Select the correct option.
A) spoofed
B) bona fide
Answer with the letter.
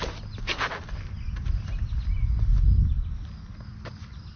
B